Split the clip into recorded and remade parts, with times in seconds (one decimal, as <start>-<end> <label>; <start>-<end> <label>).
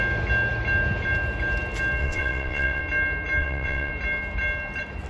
0.0-2.0 recorded; 2.0-2.8 remade; 2.8-3.4 recorded; 3.4-3.9 remade; 3.9-5.1 recorded